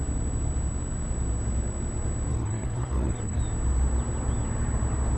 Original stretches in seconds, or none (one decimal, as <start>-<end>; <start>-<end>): 0.0-2.3; 3.4-5.2